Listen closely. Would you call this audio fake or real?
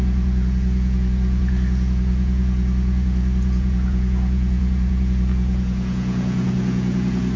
fake